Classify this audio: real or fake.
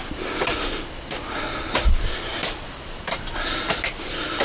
real